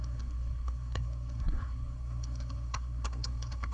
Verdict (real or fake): fake